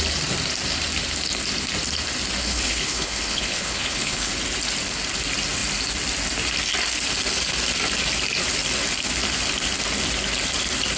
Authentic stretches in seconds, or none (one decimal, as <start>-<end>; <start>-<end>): 0.0-2.4; 4.3-11.0